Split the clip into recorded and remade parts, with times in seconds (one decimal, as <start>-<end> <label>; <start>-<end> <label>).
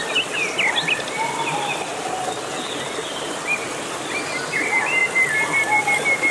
0.0-6.3 recorded